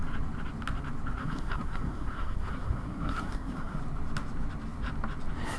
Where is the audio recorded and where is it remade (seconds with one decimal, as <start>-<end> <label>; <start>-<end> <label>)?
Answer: 0.0-1.2 recorded; 1.2-3.8 remade; 3.8-5.6 recorded